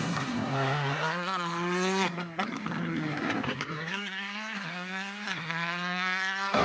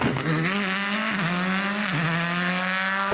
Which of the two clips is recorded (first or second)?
second